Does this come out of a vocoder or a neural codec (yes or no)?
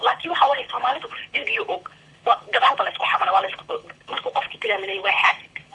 yes